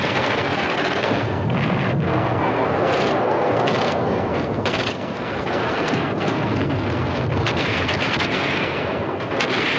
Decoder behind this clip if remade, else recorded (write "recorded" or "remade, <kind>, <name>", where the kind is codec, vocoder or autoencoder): remade, codec, SNAC